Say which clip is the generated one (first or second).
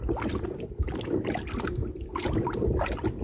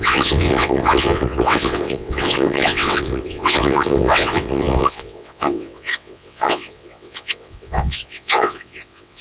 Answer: second